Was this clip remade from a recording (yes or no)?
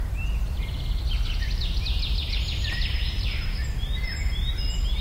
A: no